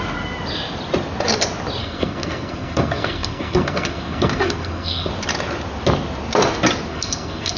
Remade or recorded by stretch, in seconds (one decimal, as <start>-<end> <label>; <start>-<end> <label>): 0.0-1.8 recorded; 1.8-5.1 remade; 5.1-6.9 recorded; 6.9-7.6 remade